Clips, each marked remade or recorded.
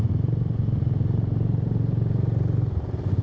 recorded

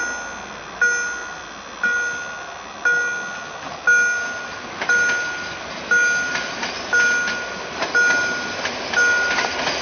recorded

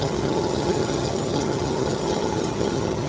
remade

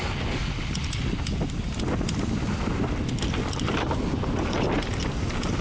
recorded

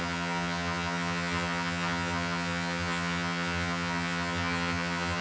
remade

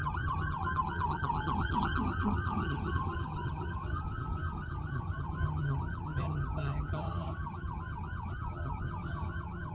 remade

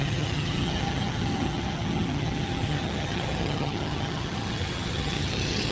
remade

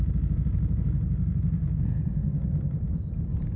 recorded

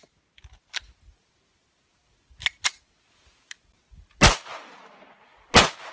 recorded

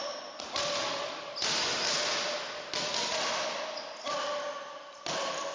recorded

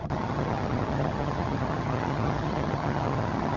remade